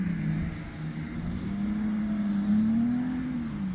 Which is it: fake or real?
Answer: real